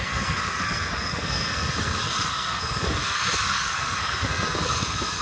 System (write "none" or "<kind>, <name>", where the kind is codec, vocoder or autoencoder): codec, SNAC